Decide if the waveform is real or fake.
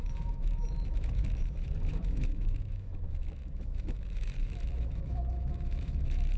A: fake